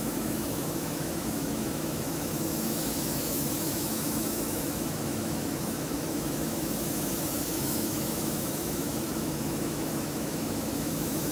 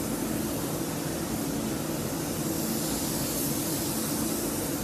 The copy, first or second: first